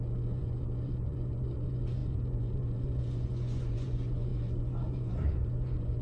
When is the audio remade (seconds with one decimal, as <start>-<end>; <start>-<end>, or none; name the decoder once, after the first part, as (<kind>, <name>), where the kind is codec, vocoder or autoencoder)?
0.0-6.0 (vocoder, Vocos)